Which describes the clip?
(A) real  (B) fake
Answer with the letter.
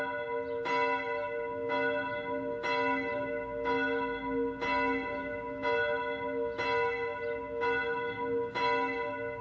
A